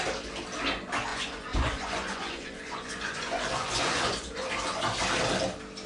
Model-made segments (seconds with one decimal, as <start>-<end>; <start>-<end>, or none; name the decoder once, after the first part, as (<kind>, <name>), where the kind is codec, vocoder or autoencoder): 1.1-4.5 (vocoder, Vocos)